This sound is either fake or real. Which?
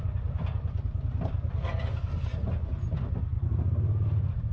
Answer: real